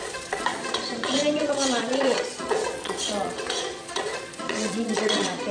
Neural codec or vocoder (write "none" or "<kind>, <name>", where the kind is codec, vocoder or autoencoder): vocoder, Vocos